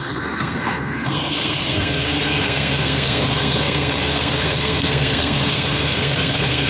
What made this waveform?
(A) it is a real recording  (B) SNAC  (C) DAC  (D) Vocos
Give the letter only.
B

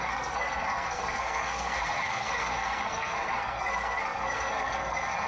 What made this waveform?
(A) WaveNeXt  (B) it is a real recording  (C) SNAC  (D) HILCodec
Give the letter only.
C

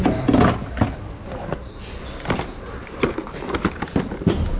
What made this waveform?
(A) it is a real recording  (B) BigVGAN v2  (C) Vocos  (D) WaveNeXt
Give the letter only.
A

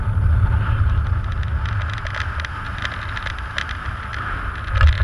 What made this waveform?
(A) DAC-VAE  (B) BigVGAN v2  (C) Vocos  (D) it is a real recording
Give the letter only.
D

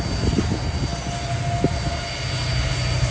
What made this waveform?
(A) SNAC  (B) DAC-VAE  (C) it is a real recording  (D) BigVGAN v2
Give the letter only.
C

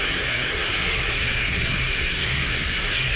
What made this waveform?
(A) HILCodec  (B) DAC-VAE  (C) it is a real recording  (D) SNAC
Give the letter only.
D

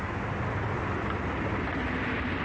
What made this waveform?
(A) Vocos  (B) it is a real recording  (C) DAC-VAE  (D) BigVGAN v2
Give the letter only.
B